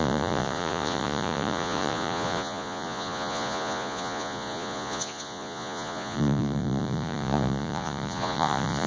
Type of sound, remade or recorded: remade